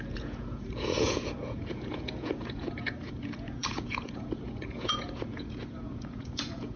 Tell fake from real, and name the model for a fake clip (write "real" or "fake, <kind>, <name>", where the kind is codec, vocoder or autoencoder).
fake, vocoder, Vocos